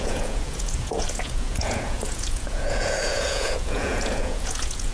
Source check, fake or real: fake